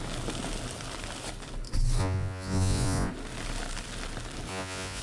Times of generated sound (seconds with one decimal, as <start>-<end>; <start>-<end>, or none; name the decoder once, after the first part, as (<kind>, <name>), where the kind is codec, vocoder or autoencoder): 2.0-3.1 (vocoder, Vocos); 4.5-5.0